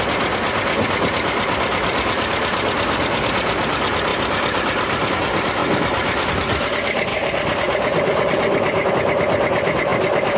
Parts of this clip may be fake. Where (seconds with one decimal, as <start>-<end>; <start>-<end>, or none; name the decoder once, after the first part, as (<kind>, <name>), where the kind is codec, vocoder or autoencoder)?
4.1-5.1 (vocoder, BigVGAN v2); 5.6-6.3; 7.1-8.9